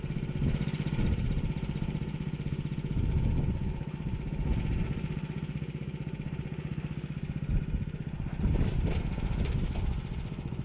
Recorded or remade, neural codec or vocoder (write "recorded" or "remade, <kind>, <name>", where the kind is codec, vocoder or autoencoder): recorded